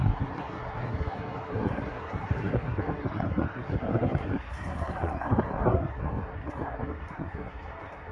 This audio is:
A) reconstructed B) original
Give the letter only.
A